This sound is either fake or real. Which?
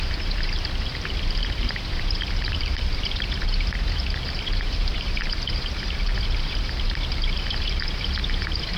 fake